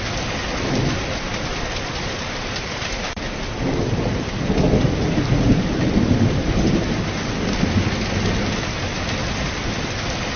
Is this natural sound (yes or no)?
yes